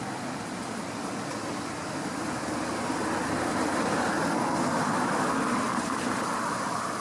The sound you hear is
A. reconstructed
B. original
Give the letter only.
B